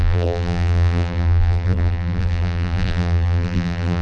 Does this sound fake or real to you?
fake